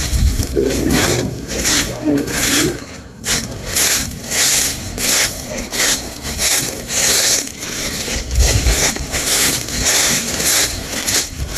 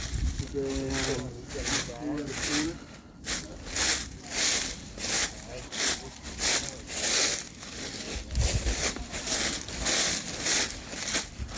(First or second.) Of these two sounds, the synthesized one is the first